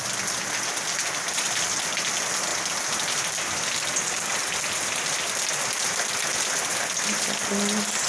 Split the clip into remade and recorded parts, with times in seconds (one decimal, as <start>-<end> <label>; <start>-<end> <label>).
0.0-8.1 recorded